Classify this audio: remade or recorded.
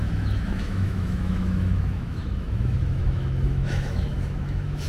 remade